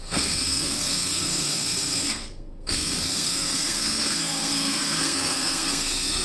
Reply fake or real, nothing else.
fake